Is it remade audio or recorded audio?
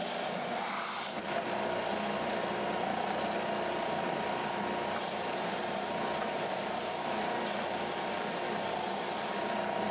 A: recorded